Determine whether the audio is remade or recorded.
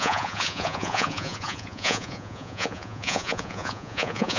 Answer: remade